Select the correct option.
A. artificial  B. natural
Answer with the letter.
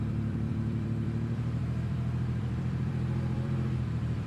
A